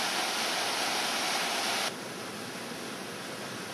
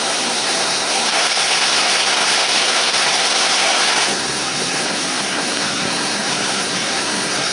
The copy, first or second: second